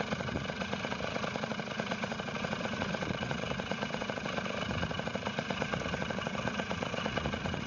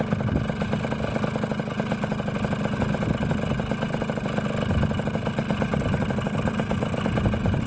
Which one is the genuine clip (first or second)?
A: second